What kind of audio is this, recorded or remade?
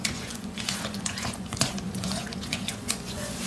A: remade